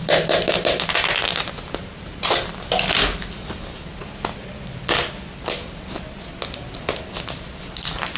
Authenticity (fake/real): real